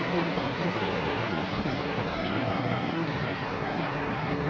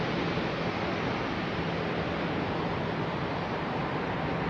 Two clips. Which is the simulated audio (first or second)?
first